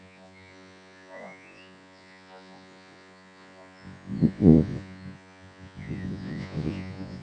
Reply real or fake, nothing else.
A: fake